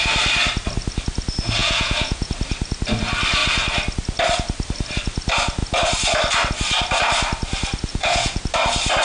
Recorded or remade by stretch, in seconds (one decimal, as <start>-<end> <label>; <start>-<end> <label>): 0.0-1.6 recorded; 1.6-2.3 remade; 2.3-7.9 recorded; 7.9-8.4 remade; 8.4-9.0 recorded